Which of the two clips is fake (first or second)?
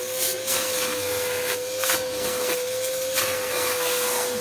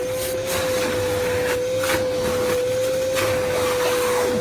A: first